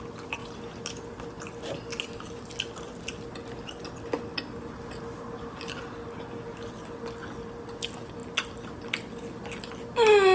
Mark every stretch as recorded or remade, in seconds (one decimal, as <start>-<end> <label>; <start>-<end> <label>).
0.0-10.3 recorded